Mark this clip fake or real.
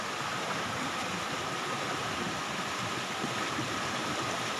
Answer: real